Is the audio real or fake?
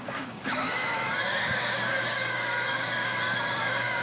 fake